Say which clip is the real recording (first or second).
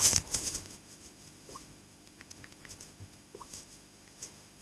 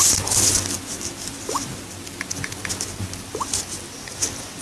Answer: second